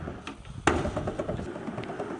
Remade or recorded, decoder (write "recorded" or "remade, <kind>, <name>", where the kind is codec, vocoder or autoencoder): recorded